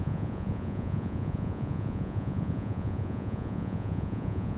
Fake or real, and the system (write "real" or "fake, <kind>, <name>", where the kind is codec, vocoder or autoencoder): fake, vocoder, Vocos